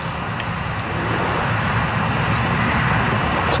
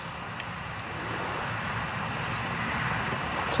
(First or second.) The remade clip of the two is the second